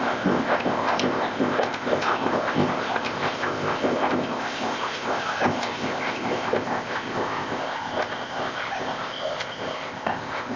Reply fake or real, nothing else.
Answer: fake